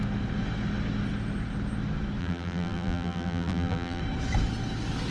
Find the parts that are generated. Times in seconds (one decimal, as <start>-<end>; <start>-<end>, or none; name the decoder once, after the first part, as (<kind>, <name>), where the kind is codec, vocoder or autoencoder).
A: 2.2-4.0 (vocoder, BigVGAN v2)

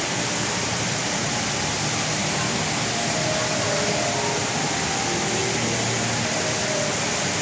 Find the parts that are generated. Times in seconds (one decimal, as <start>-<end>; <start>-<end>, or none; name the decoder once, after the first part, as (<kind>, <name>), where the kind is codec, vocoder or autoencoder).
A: none

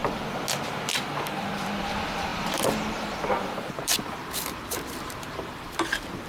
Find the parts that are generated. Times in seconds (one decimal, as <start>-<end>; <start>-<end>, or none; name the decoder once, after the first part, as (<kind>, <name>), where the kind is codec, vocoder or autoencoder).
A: 1.4-6.3 (vocoder, BigVGAN v2)

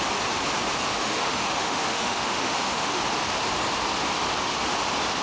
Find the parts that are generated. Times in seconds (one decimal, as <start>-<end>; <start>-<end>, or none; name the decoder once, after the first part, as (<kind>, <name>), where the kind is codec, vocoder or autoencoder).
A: 1.0-3.0 (autoencoder, DAC-VAE)